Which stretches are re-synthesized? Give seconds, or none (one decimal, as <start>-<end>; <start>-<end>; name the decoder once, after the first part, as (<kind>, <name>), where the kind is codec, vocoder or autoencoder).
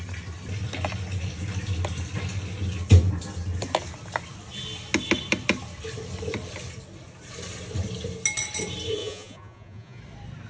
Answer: 9.0-10.0 (vocoder, Vocos)